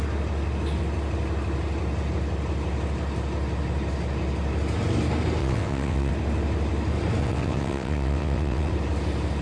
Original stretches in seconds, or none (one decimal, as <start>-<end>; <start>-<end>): 0.0-5.4; 6.1-7.2; 8.7-9.4